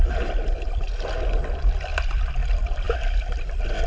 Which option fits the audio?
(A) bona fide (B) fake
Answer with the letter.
A